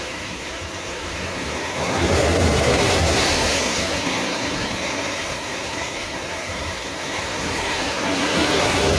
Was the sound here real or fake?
fake